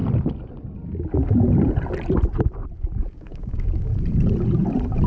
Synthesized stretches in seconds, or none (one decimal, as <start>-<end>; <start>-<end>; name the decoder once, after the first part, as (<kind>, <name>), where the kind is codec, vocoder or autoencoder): 3.1-3.9 (codec, DAC)